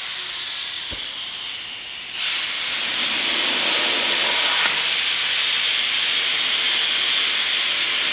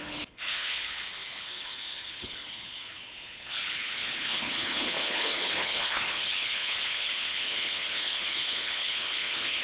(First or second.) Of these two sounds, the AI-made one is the second